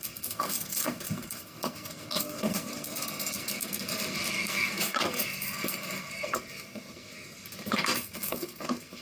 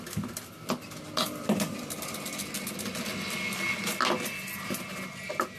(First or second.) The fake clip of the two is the first